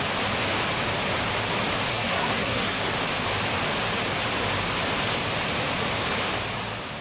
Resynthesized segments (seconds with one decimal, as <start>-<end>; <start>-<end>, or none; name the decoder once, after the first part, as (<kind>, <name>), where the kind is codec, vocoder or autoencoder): 1.9-2.9 (codec, SNAC)